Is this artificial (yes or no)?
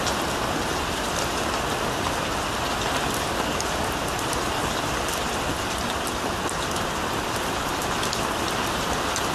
no